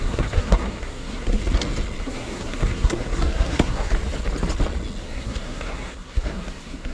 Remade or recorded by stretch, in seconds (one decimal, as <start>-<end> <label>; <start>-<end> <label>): 0.0-1.4 remade; 1.4-2.0 recorded; 2.0-3.9 remade; 3.9-5.0 recorded; 5.0-6.9 remade